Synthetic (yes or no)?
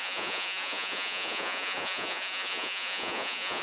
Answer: yes